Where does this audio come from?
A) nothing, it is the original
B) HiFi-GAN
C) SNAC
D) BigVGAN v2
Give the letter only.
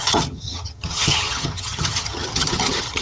B